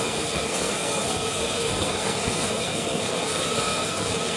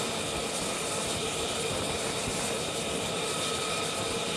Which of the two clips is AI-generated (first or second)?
first